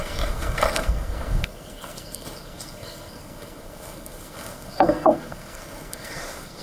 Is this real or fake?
fake